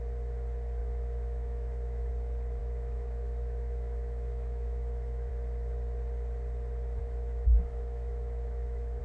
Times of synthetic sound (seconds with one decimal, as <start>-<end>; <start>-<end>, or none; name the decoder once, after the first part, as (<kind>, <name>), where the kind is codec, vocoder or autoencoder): 0.8-2.1 (autoencoder, DAC-VAE); 2.6-5.3; 7.0-9.0